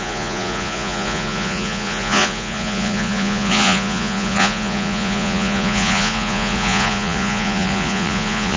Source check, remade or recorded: remade